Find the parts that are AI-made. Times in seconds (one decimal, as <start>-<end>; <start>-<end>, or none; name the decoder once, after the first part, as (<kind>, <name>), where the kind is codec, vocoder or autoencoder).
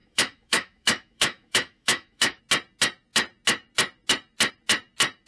0.0-2.4 (autoencoder, DAC-VAE)